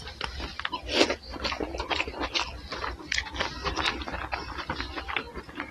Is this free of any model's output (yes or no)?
yes